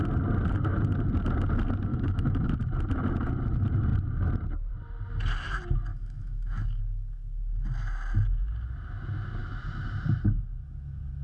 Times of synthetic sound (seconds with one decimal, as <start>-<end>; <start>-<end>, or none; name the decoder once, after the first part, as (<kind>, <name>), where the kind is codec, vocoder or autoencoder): 1.9-2.5 (autoencoder, DAC-VAE); 5.9-6.8